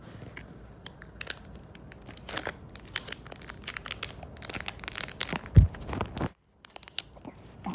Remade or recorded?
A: recorded